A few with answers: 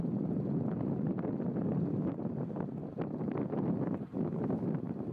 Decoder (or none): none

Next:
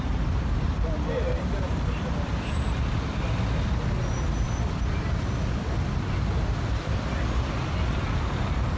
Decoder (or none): none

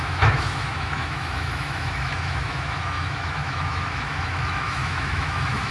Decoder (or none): autoencoder, DAC-VAE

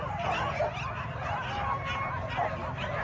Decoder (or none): none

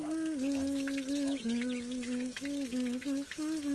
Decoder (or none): autoencoder, DAC-VAE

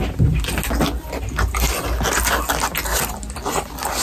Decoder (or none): none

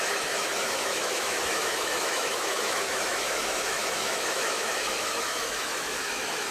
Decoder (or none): autoencoder, DAC-VAE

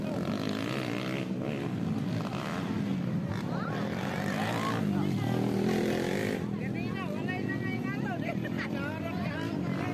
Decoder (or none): none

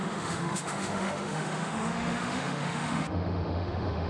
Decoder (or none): autoencoder, DAC-VAE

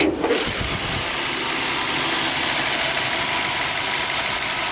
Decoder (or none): none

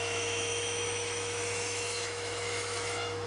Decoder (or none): autoencoder, DAC-VAE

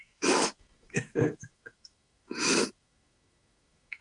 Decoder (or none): autoencoder, DAC-VAE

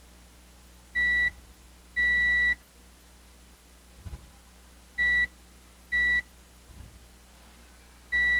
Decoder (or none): none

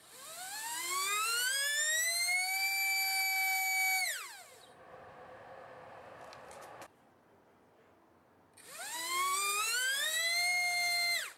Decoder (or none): none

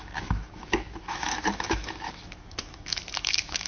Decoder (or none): autoencoder, DAC-VAE